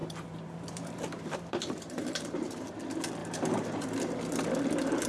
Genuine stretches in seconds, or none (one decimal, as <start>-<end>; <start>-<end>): 2.7-3.2; 4.2-5.1